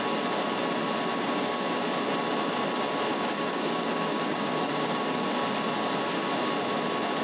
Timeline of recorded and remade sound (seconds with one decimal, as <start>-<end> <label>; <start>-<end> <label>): 0.0-1.1 recorded; 1.1-1.8 remade; 1.8-3.1 recorded; 3.1-5.1 remade; 5.1-7.2 recorded